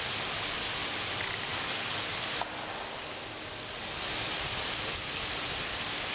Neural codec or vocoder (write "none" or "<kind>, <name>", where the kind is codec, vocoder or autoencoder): none